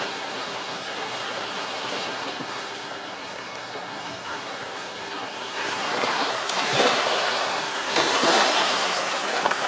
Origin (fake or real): fake